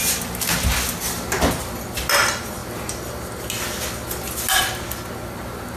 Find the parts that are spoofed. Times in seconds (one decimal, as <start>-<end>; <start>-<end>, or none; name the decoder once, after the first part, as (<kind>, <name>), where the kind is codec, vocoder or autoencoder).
none